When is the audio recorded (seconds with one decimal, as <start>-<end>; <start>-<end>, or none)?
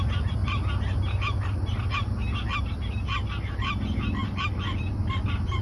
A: 0.0-5.6